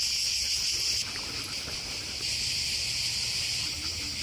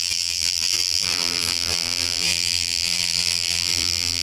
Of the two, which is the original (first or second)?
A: first